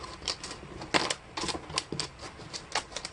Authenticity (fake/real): real